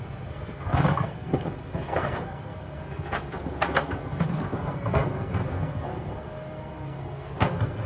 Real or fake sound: fake